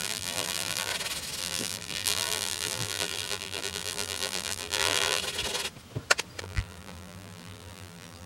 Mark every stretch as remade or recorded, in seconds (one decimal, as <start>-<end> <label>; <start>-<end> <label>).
0.0-0.9 remade; 0.9-1.4 recorded; 1.4-5.2 remade; 5.2-6.4 recorded; 6.4-8.3 remade